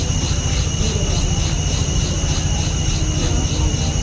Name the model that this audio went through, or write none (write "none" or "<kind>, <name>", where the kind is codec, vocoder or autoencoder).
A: none